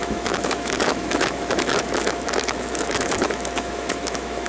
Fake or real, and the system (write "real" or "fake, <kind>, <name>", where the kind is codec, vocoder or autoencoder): fake, autoencoder, DAC-VAE